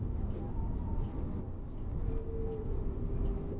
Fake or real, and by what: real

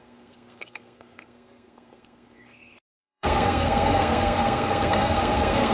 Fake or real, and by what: fake, codec, SNAC